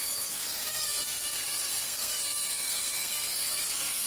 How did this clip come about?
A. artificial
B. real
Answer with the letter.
A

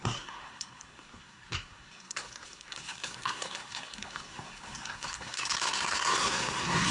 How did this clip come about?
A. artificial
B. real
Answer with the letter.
A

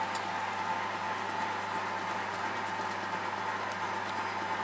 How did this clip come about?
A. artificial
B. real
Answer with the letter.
B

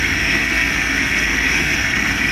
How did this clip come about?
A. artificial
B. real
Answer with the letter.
A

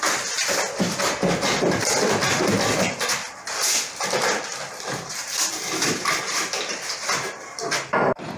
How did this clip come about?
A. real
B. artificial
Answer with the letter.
A